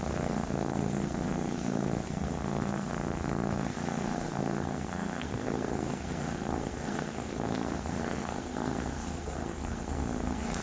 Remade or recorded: remade